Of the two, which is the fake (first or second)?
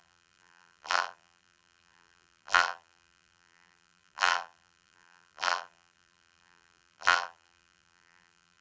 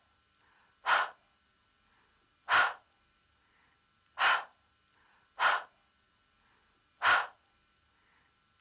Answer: first